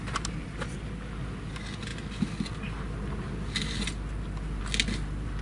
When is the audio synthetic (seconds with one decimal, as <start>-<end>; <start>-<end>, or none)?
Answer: none